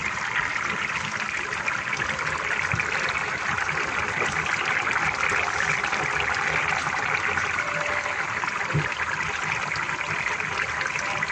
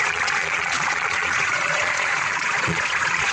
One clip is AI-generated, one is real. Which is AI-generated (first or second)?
second